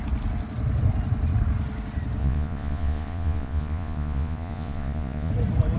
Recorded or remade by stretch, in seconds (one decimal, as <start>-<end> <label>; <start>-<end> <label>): 0.0-2.2 recorded; 2.2-5.3 remade; 5.3-5.8 recorded